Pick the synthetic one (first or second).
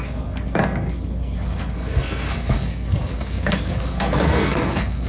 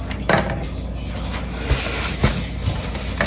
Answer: first